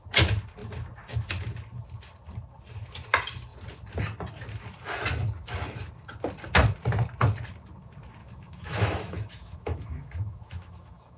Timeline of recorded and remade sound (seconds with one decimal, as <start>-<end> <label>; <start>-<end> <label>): 0.0-8.2 recorded; 8.2-11.2 remade